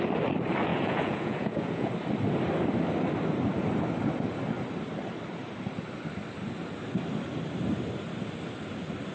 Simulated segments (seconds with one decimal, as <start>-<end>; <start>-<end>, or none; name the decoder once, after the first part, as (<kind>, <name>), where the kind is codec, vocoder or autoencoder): 0.7-1.9 (vocoder, Vocos)